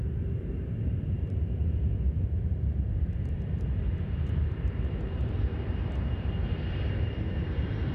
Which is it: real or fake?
fake